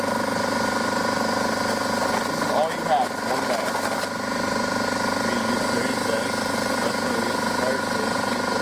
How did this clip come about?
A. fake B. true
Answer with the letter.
B